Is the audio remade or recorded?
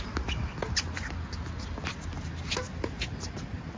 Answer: recorded